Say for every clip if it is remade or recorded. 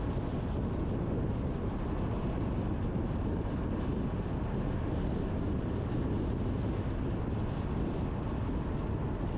recorded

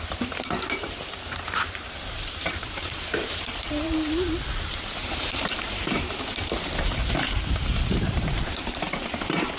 remade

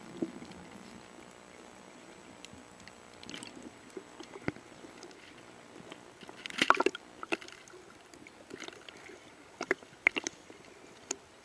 recorded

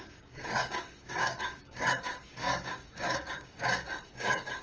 remade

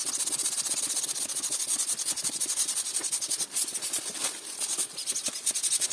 recorded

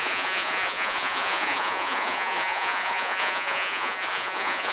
remade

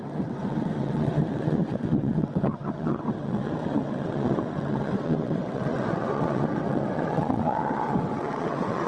remade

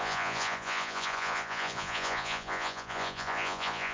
remade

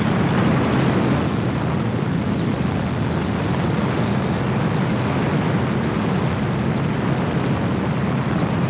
recorded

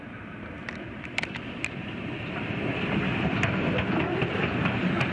remade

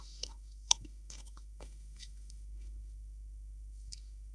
remade